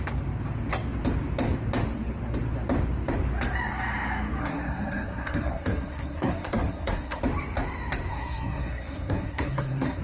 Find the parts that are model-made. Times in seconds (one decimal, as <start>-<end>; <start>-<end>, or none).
4.4-7.2; 8.1-10.0